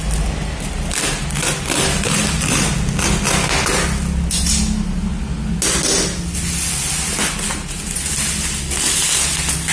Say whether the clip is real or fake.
real